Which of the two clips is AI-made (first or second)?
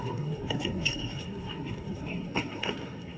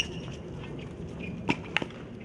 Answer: first